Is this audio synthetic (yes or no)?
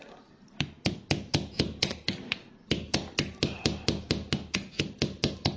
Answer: no